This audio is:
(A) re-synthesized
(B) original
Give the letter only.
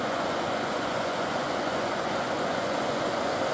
A